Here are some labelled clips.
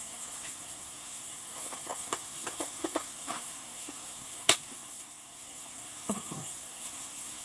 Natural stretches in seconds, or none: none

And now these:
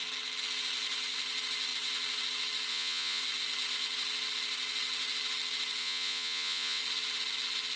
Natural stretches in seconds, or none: 0.0-2.7; 3.2-5.8; 6.8-7.8